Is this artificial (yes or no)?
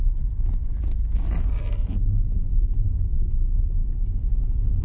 no